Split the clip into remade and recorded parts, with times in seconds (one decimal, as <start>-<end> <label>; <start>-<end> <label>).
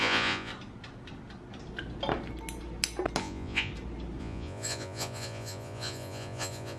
0.0-0.5 remade; 0.5-3.2 recorded; 3.2-3.7 remade; 3.7-4.2 recorded; 4.2-6.8 remade